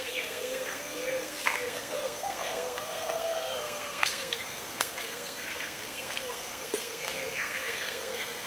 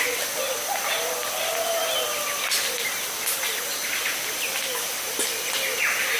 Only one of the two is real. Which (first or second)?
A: second